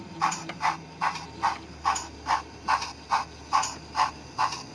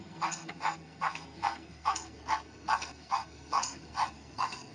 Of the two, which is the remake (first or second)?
second